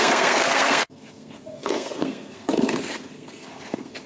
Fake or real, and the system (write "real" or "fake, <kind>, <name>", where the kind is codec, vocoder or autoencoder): fake, codec, SNAC